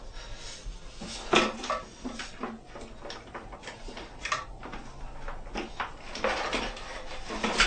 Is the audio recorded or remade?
recorded